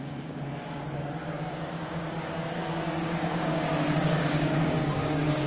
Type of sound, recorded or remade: remade